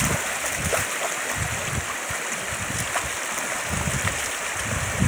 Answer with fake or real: real